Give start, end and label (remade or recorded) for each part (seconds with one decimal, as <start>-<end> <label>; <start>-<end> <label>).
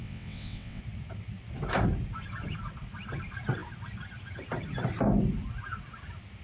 0.0-0.8 remade; 0.8-6.4 recorded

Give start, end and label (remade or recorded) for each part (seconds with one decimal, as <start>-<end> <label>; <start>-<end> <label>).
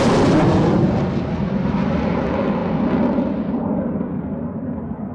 0.0-5.1 recorded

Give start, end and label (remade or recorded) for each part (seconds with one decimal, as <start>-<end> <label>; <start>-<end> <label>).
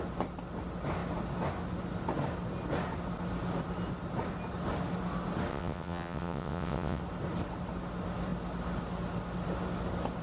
0.0-5.5 recorded; 5.5-7.0 remade; 7.0-10.2 recorded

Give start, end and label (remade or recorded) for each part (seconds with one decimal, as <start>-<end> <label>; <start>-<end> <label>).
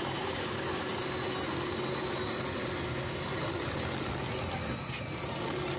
0.0-5.8 recorded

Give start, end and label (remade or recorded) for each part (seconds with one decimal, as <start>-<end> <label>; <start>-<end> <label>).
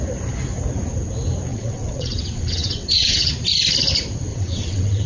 0.0-1.5 recorded; 1.5-3.3 remade; 3.3-4.3 recorded; 4.3-5.1 remade